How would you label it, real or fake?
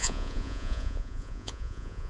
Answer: fake